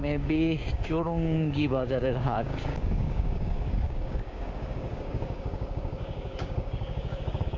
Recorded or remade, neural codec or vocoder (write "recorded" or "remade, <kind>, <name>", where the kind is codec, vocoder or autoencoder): remade, codec, DAC